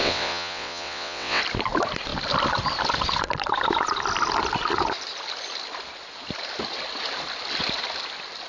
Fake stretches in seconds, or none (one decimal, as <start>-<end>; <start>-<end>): 0.0-1.4